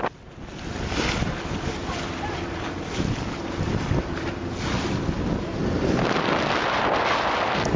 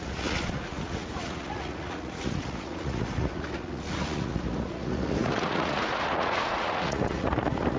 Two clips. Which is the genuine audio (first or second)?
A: first